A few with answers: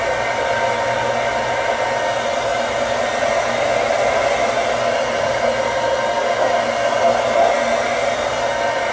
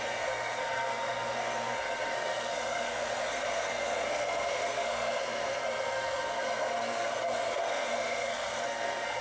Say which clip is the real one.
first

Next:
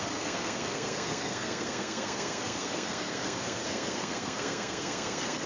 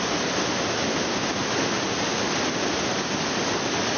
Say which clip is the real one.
second